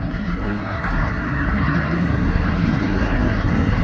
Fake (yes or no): yes